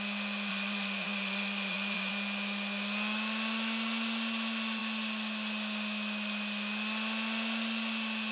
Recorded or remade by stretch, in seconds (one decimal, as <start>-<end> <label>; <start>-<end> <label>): 0.0-0.5 recorded; 0.5-2.1 remade; 2.1-8.3 recorded